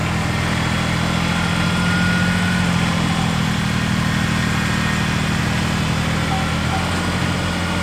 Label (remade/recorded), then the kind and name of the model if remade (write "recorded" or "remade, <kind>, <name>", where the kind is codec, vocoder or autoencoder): recorded